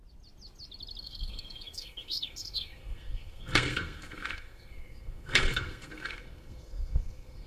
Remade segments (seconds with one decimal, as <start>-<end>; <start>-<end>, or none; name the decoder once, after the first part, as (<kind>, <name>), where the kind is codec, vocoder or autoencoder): 1.0-7.5 (codec, SNAC)